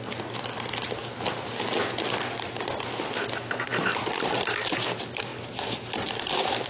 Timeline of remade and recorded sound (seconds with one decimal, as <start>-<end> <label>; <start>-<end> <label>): 0.0-6.7 recorded